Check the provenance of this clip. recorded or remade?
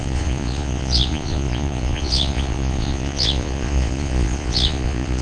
remade